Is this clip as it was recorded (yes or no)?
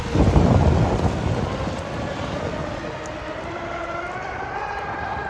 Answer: yes